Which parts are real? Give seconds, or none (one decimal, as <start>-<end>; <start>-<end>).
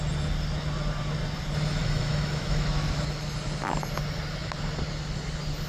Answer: 0.0-1.8; 2.9-5.7